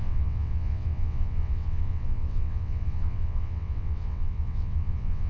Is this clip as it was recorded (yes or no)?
no